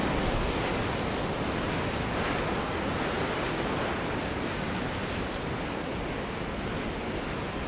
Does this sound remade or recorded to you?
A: recorded